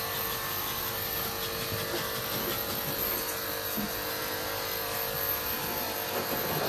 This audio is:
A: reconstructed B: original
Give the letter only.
B